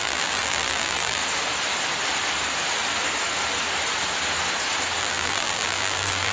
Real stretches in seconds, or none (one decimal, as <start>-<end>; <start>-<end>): 1.2-5.0